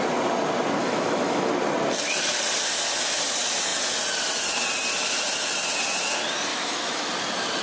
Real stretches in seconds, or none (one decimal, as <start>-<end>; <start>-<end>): 0.0-0.8; 1.5-6.5; 7.1-7.6